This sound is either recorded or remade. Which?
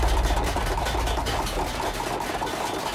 recorded